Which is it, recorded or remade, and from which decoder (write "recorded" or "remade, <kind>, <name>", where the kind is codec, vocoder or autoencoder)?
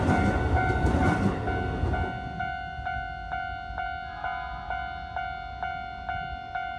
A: recorded